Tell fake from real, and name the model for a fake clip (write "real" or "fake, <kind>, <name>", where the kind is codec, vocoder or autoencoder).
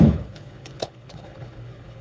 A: fake, codec, HILCodec